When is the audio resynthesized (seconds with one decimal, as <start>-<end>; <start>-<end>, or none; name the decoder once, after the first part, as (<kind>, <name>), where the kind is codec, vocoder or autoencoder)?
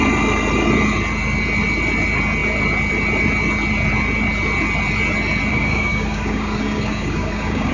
5.5-7.7 (codec, DAC)